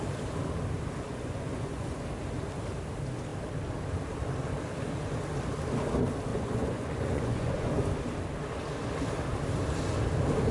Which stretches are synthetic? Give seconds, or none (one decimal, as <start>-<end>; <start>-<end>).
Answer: 1.1-2.0; 6.3-7.7